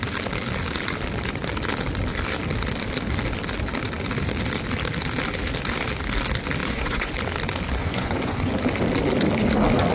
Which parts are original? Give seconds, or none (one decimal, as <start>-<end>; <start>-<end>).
0.0-6.6; 7.1-7.8; 8.5-9.9